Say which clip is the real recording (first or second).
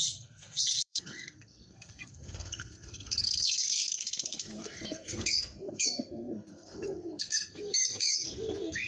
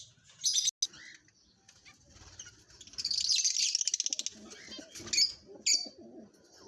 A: second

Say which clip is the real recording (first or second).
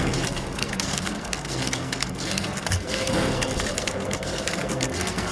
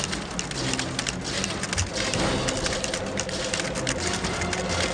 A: second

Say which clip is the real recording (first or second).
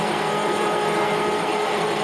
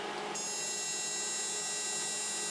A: second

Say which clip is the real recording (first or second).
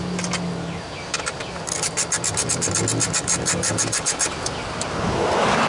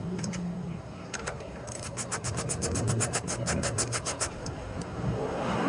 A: first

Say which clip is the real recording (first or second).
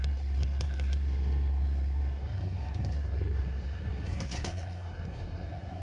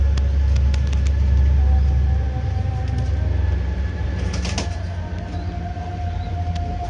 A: second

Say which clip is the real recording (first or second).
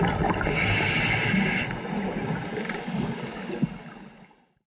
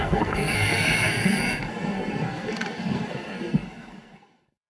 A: first